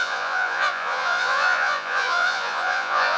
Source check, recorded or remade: remade